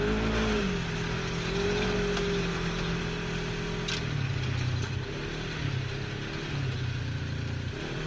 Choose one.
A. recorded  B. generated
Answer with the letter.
A